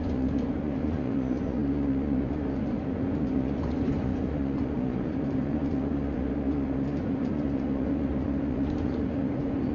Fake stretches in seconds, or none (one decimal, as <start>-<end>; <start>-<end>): 0.0-9.7